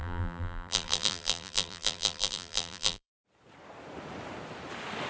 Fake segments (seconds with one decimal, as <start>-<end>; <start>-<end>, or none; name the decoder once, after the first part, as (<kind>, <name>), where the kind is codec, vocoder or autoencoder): 0.0-3.1 (vocoder, BigVGAN v2)

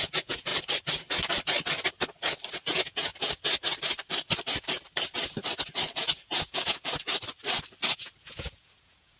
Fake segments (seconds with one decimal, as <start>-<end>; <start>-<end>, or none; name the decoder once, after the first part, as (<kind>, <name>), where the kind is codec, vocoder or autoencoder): 0.0-0.5 (vocoder, Vocos); 2.5-3.1; 5.9-7.1; 7.9-9.2

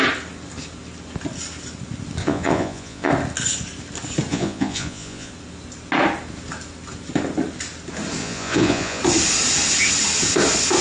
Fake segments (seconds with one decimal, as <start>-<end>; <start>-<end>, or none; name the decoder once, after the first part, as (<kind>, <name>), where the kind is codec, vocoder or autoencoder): 2.2-3.1 (vocoder, Vocos); 4.3-5.3; 8.2-9.0